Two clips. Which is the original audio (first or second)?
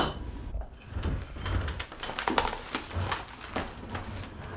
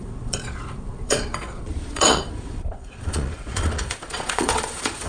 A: first